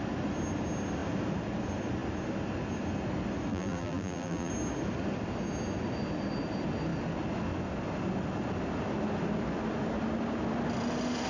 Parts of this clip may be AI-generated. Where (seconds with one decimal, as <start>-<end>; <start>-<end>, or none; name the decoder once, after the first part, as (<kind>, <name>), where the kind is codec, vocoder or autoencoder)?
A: 3.5-4.5 (vocoder, BigVGAN v2)